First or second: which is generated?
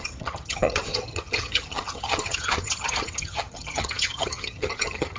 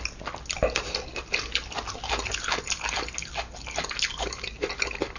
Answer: first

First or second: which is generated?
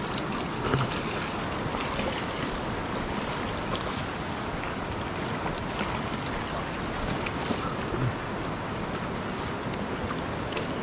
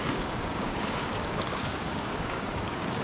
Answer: second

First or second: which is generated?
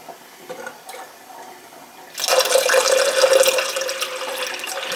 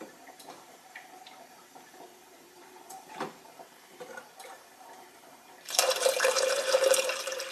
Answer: second